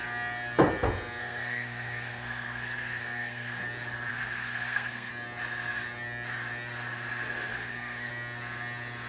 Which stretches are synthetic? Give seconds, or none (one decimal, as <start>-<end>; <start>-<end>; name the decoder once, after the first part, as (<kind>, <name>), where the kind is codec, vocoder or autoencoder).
1.2-3.6 (codec, SNAC); 4.1-5.1; 7.5-8.1